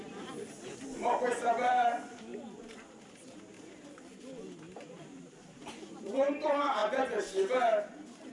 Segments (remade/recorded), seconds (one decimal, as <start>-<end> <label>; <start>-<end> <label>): 0.0-6.8 remade; 6.8-7.8 recorded; 7.8-8.3 remade